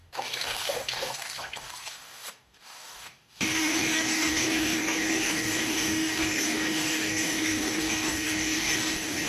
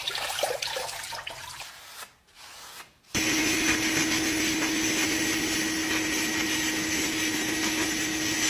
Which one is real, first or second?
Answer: second